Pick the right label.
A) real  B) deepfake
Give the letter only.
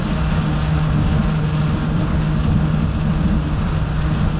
A